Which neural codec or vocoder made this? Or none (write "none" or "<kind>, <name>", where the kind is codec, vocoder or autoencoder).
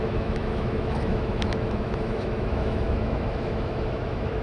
autoencoder, DAC-VAE